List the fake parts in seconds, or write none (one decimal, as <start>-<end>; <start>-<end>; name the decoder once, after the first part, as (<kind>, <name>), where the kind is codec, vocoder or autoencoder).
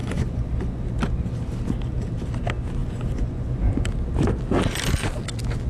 0.0-0.8 (vocoder, Vocos); 2.8-3.7